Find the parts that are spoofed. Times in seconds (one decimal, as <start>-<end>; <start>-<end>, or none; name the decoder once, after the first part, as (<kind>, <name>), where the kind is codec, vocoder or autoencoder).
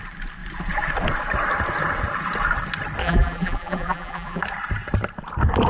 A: 3.0-4.4 (vocoder, BigVGAN v2)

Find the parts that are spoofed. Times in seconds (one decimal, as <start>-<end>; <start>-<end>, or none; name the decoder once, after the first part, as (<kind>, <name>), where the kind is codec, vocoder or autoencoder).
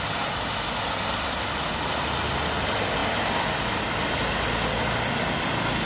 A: none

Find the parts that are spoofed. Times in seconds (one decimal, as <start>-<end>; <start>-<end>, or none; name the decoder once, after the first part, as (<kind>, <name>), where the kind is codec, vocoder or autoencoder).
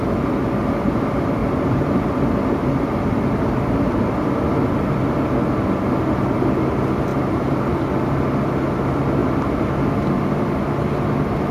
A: 1.4-2.1 (vocoder, BigVGAN v2); 7.1-7.8